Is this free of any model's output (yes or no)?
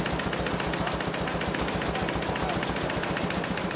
yes